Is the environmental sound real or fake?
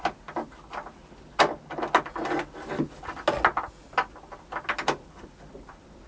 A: real